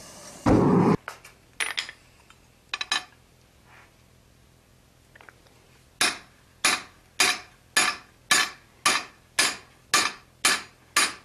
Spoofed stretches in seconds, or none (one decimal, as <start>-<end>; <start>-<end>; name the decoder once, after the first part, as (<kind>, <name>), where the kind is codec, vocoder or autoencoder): none